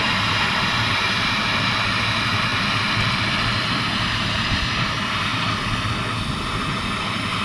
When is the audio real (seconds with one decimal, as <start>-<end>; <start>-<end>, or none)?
2.5-4.0; 5.3-7.0